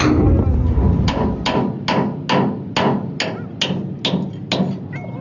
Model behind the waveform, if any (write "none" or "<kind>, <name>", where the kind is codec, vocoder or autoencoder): none